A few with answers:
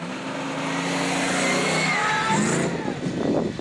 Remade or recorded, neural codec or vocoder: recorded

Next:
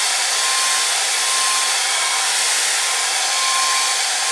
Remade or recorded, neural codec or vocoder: recorded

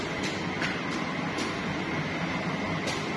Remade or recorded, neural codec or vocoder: recorded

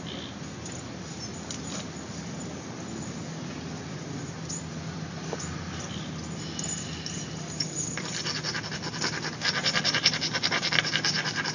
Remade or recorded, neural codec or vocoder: recorded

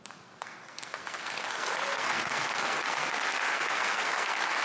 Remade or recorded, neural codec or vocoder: remade, codec, SNAC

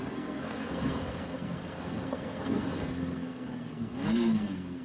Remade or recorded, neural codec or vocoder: remade, codec, SNAC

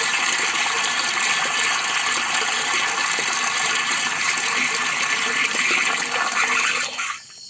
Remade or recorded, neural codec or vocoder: recorded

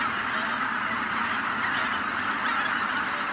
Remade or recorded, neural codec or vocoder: recorded